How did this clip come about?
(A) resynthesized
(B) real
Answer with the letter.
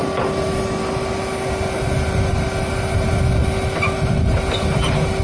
B